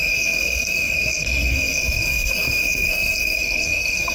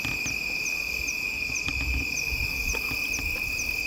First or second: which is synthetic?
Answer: first